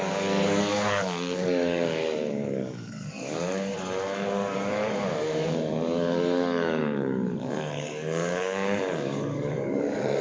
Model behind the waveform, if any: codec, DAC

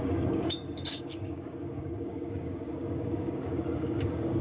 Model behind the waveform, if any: codec, DAC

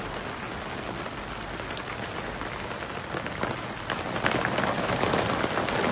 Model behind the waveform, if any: none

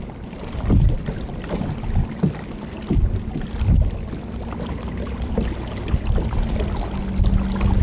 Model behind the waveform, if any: none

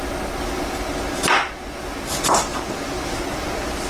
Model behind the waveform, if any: none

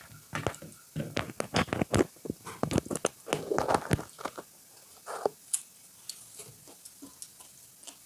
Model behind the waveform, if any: none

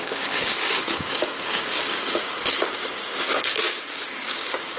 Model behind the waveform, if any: codec, DAC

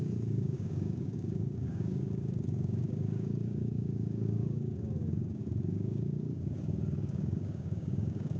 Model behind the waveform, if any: codec, DAC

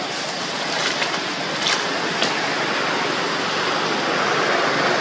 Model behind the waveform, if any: none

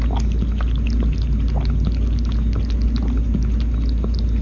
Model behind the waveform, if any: none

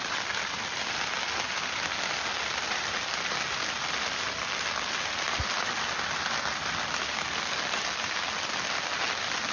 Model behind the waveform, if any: none